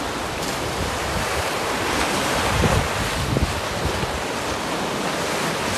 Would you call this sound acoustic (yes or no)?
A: yes